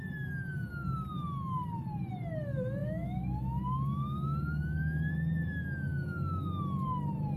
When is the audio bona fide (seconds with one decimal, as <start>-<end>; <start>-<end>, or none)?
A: 0.0-2.8; 5.1-5.9; 6.6-7.4